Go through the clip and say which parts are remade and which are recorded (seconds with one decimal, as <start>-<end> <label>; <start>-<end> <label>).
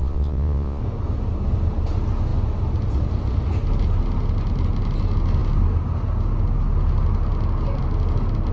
0.0-0.8 remade; 0.8-8.5 recorded